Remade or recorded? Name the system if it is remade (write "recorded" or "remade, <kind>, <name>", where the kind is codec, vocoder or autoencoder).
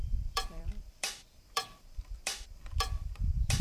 remade, vocoder, BigVGAN v2